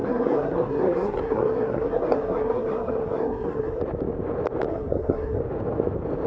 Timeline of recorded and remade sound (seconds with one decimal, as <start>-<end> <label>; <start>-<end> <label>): 0.0-3.8 remade; 3.8-4.7 recorded; 4.7-5.4 remade; 5.4-6.3 recorded